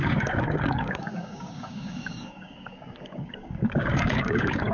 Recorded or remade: remade